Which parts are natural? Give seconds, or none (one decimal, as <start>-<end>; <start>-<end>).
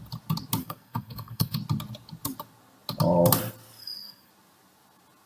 0.0-0.6; 1.6-3.8; 4.3-5.3